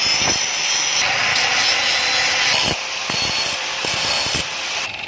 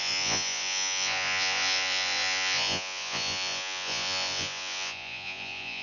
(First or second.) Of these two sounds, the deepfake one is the second